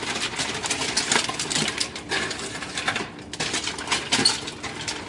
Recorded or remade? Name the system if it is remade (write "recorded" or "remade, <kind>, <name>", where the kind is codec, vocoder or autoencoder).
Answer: recorded